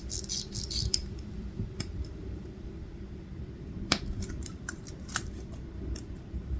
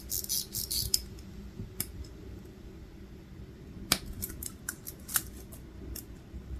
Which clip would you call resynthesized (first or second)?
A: first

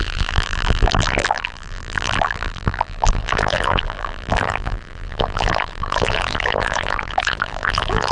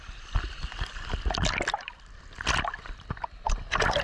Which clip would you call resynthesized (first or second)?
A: first